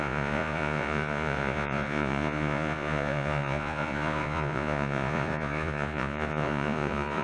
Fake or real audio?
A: fake